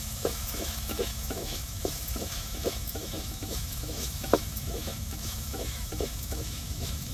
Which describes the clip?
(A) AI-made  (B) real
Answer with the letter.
A